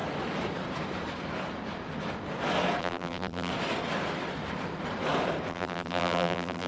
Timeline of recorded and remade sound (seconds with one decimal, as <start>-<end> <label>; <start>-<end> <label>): 0.0-2.8 recorded; 2.8-3.5 remade; 3.5-5.5 recorded; 5.5-6.7 remade